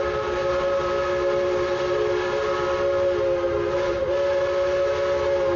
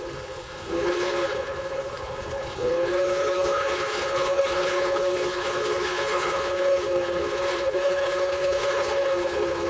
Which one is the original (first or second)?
first